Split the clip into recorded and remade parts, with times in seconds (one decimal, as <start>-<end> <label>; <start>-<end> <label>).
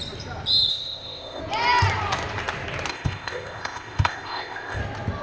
0.0-0.7 recorded; 0.7-1.4 remade; 1.4-2.9 recorded; 2.9-4.8 remade; 4.8-5.2 recorded